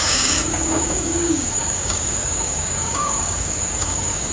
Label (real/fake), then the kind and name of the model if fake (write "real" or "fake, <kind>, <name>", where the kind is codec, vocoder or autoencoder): fake, codec, DAC